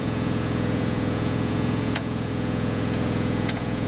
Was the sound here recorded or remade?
remade